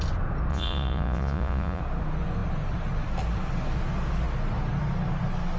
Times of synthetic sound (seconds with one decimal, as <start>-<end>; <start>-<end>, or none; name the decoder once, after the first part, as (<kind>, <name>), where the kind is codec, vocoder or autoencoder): 0.5-1.8 (vocoder, Vocos)